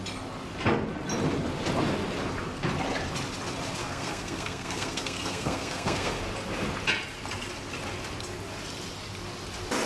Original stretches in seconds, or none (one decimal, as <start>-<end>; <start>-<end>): 0.0-3.8; 6.2-9.9